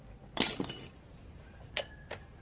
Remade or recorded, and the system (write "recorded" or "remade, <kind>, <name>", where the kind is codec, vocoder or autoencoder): recorded